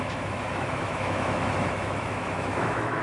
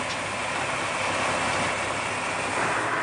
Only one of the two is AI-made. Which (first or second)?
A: first